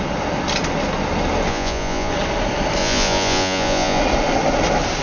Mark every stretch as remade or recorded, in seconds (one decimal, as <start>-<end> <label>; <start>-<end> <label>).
0.0-1.5 recorded; 1.5-2.1 remade; 2.1-2.8 recorded; 2.8-4.0 remade; 4.0-5.0 recorded